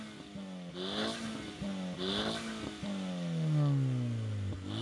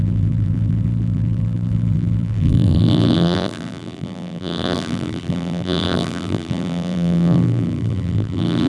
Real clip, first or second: first